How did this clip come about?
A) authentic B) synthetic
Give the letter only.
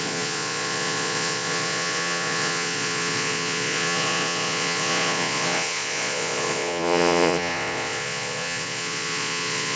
B